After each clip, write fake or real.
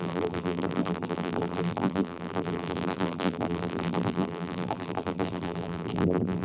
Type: fake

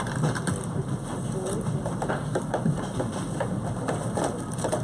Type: fake